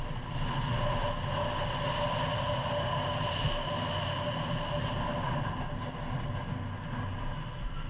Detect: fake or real real